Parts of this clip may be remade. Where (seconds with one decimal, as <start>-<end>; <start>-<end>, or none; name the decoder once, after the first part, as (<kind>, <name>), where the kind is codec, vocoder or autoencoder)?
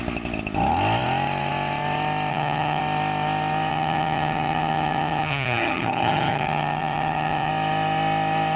2.3-2.8 (vocoder, HiFi-GAN); 3.7-7.5